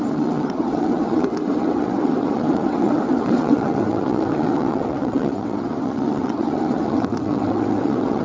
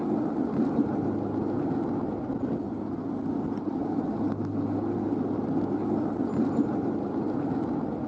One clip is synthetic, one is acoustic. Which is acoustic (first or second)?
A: second